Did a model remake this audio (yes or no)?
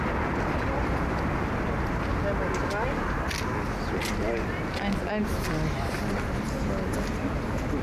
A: no